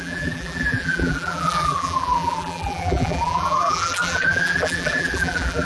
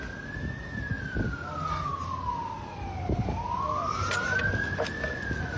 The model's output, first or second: first